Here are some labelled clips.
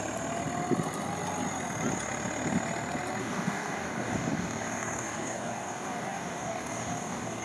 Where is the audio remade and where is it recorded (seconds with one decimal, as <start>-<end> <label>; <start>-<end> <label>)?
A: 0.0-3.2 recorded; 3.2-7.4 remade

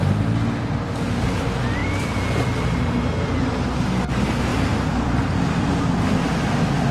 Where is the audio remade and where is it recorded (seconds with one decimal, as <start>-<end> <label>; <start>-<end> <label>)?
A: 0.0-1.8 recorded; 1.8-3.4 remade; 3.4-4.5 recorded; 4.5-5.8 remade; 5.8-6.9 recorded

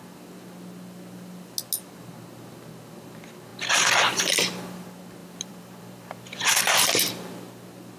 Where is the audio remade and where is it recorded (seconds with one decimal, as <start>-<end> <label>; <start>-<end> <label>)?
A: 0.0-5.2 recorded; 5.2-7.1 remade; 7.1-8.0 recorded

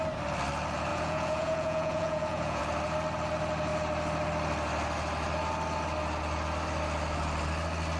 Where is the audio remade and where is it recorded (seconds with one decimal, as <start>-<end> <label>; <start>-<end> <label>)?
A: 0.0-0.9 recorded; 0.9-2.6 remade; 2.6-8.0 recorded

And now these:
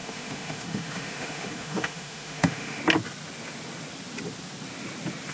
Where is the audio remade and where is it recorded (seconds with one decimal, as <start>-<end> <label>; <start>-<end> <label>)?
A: 0.0-2.8 remade; 2.8-5.3 recorded

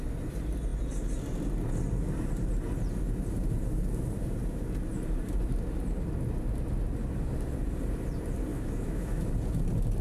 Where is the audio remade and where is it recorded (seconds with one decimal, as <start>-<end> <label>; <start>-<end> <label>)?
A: 0.0-8.5 recorded; 8.5-9.2 remade; 9.2-10.0 recorded